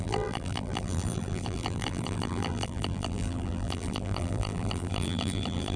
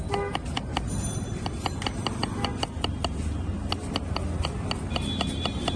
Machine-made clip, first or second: first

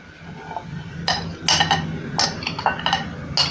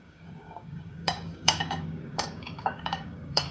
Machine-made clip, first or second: second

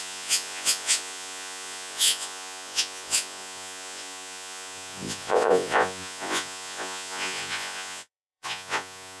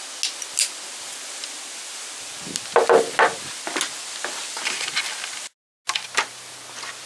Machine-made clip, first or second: first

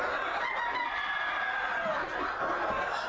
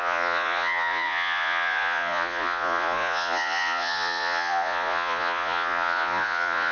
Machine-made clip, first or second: second